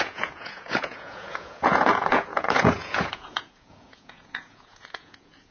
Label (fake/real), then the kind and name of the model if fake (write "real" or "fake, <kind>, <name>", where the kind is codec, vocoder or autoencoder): fake, vocoder, Vocos